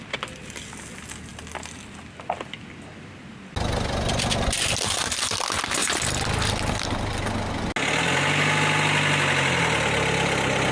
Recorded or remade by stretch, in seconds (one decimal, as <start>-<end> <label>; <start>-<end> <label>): 0.0-10.7 recorded